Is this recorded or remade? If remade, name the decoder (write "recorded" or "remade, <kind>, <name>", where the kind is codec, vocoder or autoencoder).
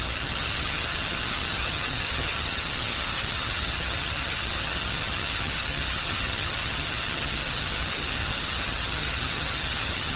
remade, vocoder, HiFi-GAN